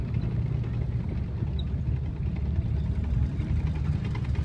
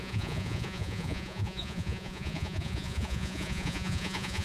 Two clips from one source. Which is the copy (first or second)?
second